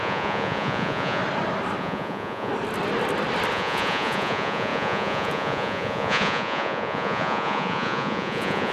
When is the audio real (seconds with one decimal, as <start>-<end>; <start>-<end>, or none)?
1.2-1.8; 2.5-3.5